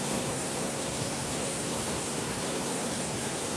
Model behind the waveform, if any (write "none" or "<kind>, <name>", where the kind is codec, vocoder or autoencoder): codec, SNAC